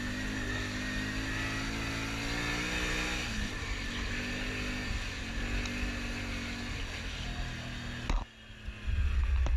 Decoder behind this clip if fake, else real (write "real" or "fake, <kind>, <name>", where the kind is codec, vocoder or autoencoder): real